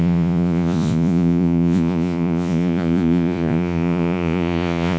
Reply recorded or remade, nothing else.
remade